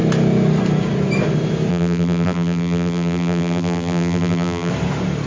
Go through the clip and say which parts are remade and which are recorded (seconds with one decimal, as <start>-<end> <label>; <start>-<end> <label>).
0.0-1.7 recorded; 1.7-4.7 remade; 4.7-5.3 recorded